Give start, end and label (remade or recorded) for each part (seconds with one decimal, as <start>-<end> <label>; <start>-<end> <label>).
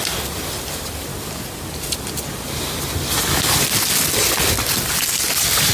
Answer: 0.0-5.7 recorded